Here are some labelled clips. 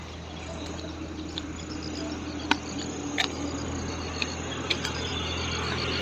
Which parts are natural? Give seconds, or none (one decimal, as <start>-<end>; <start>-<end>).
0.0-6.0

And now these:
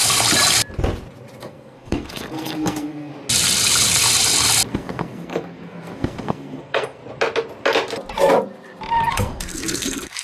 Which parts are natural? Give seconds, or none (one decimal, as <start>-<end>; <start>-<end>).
0.0-1.4; 3.1-4.7; 7.0-9.1

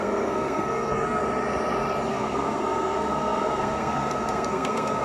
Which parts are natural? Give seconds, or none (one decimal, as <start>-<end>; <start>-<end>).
1.2-2.1

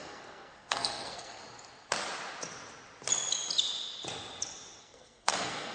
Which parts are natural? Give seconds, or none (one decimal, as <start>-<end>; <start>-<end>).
1.4-4.8